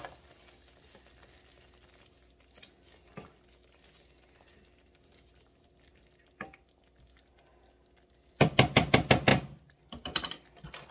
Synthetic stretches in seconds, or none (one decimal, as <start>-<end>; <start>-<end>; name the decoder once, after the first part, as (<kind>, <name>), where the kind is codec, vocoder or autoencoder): 5.9-6.6 (vocoder, BigVGAN v2); 9.3-9.8